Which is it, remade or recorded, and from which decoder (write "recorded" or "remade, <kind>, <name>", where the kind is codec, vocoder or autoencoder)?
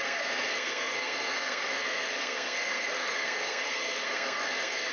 remade, codec, SNAC